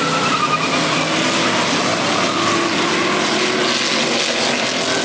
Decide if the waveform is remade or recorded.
recorded